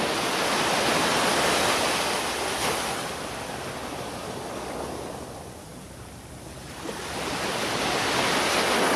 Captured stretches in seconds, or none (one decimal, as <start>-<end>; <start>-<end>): 0.0-9.0